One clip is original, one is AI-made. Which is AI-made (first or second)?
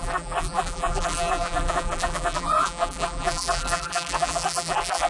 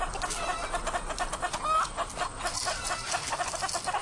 first